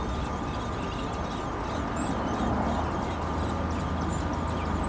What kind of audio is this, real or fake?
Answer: real